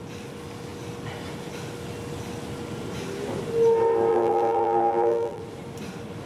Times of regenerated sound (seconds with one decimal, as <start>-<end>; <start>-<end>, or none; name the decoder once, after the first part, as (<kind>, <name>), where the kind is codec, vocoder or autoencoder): 4.1-5.4 (vocoder, BigVGAN v2)